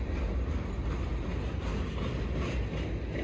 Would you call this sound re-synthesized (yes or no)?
no